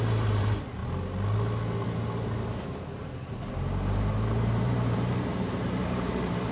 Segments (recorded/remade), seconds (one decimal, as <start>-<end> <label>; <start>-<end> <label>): 0.0-0.8 remade; 0.8-3.5 recorded; 3.5-6.5 remade